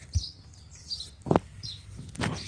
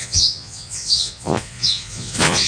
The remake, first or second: second